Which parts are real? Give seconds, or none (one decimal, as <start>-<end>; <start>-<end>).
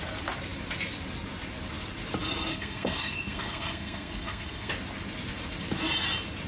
0.0-2.5; 4.7-6.5